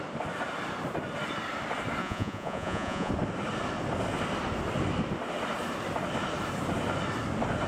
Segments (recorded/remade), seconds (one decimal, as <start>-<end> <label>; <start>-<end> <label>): 0.0-2.0 recorded; 2.0-3.1 remade; 3.1-7.7 recorded